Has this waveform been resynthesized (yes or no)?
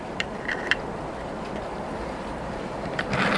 yes